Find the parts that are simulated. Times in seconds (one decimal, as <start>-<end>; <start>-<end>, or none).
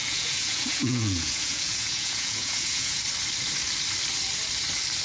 0.0-3.0